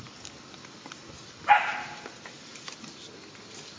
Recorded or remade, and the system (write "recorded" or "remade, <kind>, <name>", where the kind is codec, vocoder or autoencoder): recorded